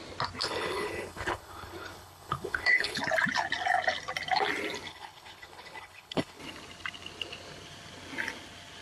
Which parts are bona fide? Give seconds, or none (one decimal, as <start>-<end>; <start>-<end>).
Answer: 0.0-0.4; 3.0-4.9; 6.4-8.8